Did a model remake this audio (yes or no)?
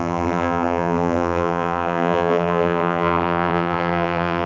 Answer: yes